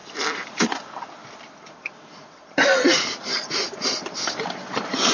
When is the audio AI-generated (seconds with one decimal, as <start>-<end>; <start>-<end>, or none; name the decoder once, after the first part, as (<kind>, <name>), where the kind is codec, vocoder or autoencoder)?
0.0-0.7 (vocoder, BigVGAN v2)